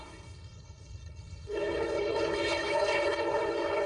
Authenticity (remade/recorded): remade